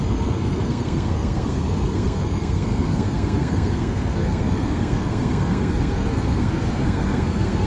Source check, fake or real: fake